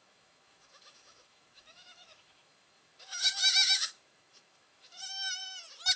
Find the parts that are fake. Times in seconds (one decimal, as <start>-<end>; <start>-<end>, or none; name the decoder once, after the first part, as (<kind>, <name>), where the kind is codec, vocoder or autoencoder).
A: 0.0-5.4 (autoencoder, DAC-VAE)